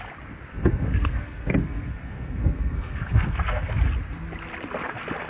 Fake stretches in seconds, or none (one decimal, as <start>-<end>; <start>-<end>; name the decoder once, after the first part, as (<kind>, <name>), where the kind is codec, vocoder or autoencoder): 0.5-3.7 (codec, SNAC)

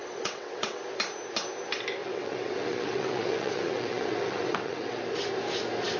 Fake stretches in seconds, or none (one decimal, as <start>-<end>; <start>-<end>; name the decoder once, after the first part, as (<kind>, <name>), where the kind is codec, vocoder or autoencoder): 0.0-0.8 (vocoder, WaveNeXt); 2.0-5.0

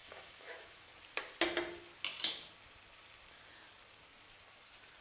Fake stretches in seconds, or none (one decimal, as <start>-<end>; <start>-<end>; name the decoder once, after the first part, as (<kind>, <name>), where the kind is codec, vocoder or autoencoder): 0.0-0.9 (autoencoder, DAC-VAE)

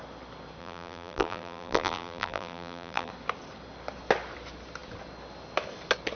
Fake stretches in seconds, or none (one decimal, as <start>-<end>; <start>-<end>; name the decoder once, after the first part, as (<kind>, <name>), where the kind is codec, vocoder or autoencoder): 0.6-3.1 (vocoder, BigVGAN v2)

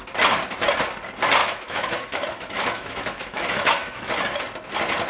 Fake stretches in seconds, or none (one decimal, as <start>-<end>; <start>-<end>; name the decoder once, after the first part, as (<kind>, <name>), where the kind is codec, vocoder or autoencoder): 1.4-4.1 (autoencoder, DAC-VAE)

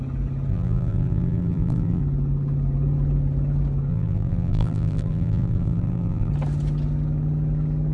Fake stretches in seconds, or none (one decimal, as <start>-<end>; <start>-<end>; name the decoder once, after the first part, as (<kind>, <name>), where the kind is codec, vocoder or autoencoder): 0.5-2.0 (vocoder, BigVGAN v2); 3.9-6.3